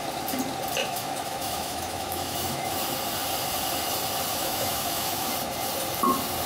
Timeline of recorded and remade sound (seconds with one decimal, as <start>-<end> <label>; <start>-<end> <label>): 0.0-0.8 recorded; 0.8-2.7 remade; 2.7-4.3 recorded; 4.3-5.3 remade; 5.3-6.5 recorded